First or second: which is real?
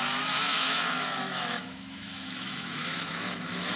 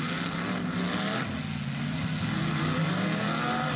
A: second